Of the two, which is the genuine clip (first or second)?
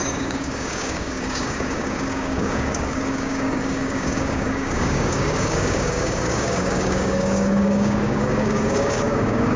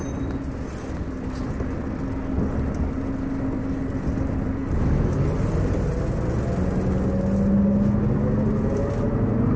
second